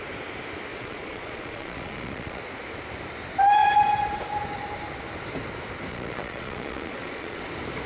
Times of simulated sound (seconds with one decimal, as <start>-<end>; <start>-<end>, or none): 0.7-2.4; 5.9-7.4